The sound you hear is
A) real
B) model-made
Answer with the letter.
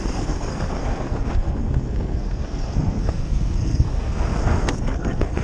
B